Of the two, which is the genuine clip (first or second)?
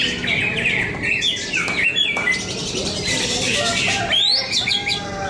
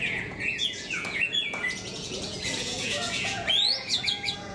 first